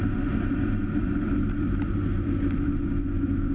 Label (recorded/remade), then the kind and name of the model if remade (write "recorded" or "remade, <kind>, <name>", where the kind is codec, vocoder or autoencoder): remade, vocoder, BigVGAN v2